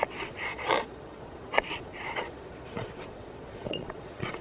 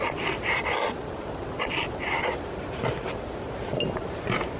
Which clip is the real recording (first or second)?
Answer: second